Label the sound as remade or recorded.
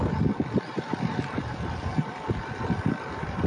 remade